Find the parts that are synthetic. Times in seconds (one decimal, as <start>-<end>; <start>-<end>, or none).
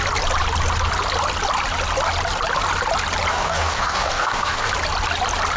3.3-4.7